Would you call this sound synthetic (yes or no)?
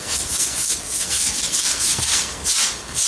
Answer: yes